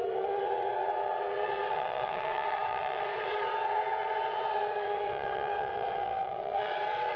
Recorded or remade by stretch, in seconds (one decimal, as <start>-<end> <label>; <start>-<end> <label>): 0.0-7.2 remade